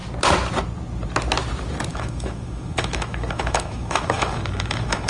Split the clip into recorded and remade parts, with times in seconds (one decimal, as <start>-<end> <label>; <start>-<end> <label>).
0.0-1.9 recorded; 1.9-5.1 remade